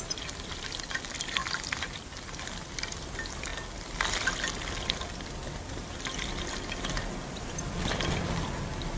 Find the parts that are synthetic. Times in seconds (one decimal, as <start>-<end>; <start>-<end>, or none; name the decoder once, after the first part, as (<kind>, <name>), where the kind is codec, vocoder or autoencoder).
none